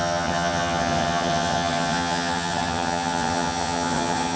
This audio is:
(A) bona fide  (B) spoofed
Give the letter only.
B